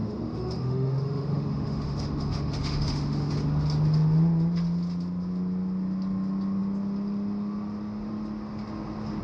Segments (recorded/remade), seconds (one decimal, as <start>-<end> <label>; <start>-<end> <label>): 0.0-3.3 remade; 3.3-9.2 recorded

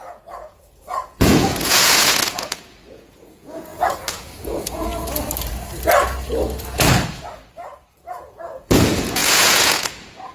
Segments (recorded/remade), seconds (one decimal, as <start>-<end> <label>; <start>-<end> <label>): 0.0-4.9 remade; 4.9-8.1 recorded; 8.1-10.3 remade

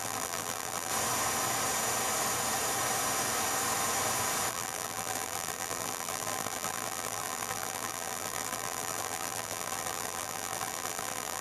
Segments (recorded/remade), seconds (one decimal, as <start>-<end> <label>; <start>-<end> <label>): 0.0-0.9 remade; 0.9-4.5 recorded; 4.5-11.4 remade

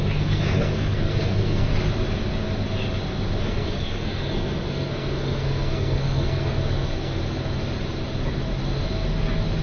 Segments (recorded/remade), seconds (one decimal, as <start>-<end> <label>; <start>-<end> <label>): 0.0-1.7 remade; 1.7-3.4 recorded; 3.4-7.2 remade; 7.2-9.6 recorded